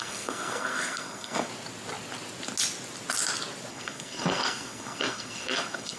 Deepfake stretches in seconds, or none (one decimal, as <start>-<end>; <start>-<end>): 0.0-1.5; 3.7-6.0